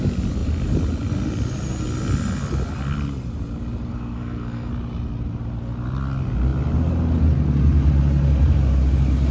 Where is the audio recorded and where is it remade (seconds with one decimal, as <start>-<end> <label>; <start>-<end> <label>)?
0.0-3.9 recorded; 3.9-4.7 remade; 4.7-9.3 recorded